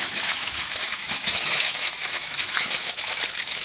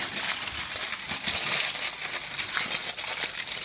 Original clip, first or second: second